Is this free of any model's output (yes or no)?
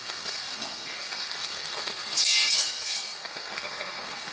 no